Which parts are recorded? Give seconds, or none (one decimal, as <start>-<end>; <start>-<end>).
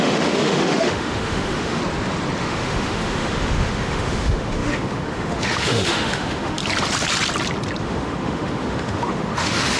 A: 1.8-2.4; 6.6-7.8